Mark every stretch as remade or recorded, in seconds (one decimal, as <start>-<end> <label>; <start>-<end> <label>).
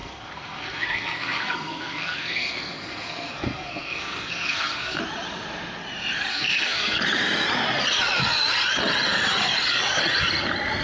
0.0-5.0 remade; 5.0-6.3 recorded; 6.3-7.0 remade; 7.0-10.8 recorded